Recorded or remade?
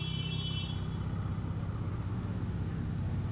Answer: recorded